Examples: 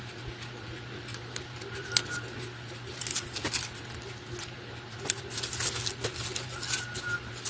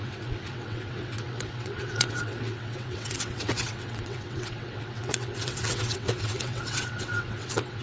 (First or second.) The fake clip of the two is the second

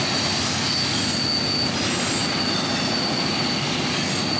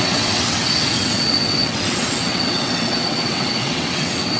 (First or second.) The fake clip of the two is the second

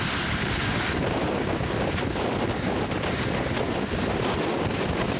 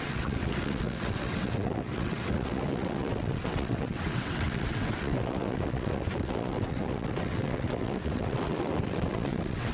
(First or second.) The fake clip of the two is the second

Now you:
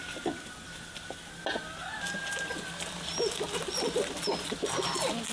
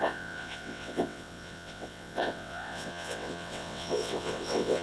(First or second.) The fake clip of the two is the second